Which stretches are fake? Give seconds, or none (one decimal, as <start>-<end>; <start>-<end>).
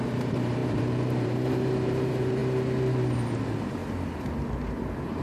0.0-2.4; 3.3-3.8; 4.5-5.2